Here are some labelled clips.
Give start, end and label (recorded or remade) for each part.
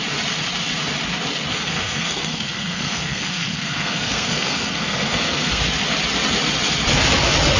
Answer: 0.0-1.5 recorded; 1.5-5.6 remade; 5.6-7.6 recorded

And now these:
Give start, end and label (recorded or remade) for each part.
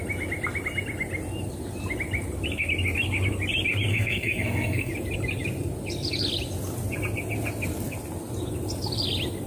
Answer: 0.0-3.9 recorded; 3.9-4.9 remade; 4.9-9.5 recorded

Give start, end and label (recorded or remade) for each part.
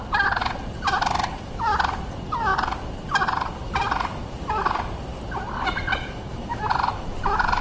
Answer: 0.0-7.6 recorded